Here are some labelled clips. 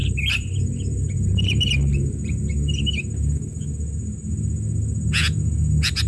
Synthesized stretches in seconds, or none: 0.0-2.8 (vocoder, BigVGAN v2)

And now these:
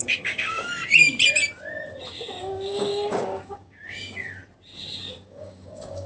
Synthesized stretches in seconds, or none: 0.0-0.7 (codec, DAC); 2.4-4.4; 5.1-6.1

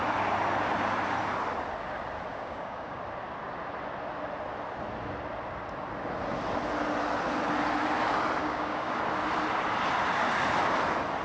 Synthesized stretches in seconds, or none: 2.3-3.0 (codec, DAC); 8.4-9.0